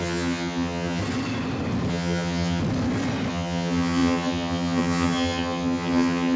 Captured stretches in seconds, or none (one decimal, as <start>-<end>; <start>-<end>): 1.0-1.9; 2.6-3.3